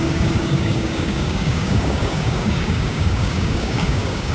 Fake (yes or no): yes